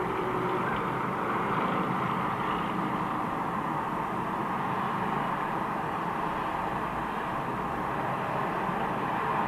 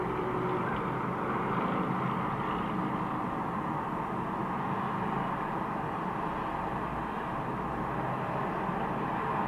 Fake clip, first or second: first